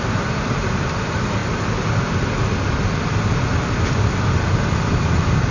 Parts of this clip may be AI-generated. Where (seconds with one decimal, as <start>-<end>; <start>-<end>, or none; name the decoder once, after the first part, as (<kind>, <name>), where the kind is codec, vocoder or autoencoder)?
0.0-1.4 (vocoder, BigVGAN v2); 4.7-5.5

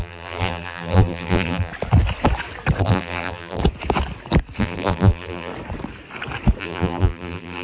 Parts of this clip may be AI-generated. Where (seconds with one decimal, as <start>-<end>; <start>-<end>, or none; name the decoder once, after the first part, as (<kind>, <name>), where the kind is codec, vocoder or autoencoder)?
0.0-1.7 (vocoder, BigVGAN v2); 2.8-3.6; 4.6-5.5; 6.6-7.6